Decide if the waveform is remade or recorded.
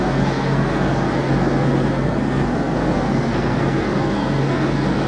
remade